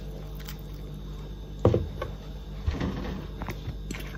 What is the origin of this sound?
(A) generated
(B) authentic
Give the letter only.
B